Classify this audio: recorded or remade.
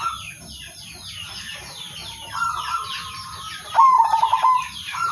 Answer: recorded